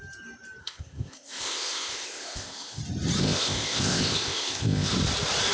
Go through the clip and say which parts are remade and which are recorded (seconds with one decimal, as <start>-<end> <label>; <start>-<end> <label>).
0.0-0.6 recorded; 0.6-2.8 remade; 2.8-3.2 recorded; 3.2-4.9 remade; 4.9-5.5 recorded